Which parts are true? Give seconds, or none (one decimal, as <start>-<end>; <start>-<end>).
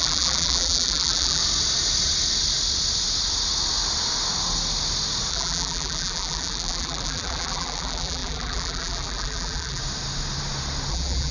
1.4-5.3; 9.8-10.9